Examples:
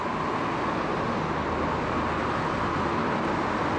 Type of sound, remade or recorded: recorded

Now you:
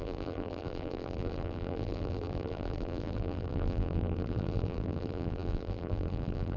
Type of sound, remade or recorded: remade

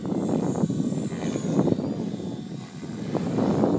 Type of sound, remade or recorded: recorded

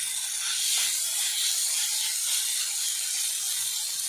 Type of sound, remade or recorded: recorded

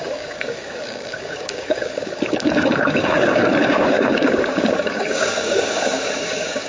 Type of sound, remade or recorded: remade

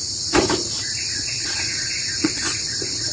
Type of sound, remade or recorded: remade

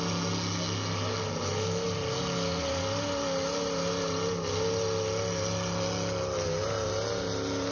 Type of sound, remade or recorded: recorded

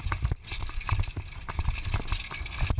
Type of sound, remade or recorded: recorded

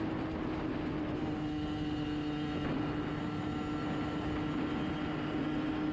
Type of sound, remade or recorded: recorded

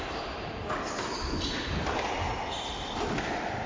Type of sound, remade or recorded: recorded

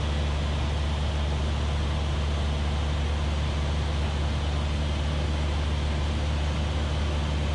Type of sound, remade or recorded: recorded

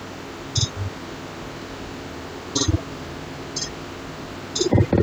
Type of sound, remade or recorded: recorded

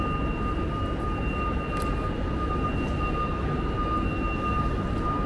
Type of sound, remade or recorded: recorded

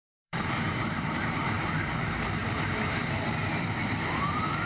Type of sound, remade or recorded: remade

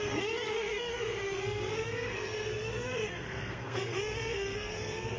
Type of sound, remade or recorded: remade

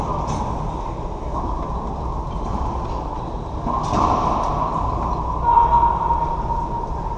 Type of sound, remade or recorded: recorded